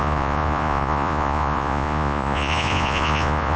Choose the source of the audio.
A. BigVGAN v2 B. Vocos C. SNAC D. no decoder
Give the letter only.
B